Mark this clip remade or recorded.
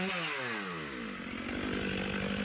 recorded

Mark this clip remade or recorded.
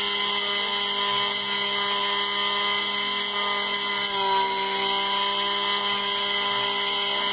recorded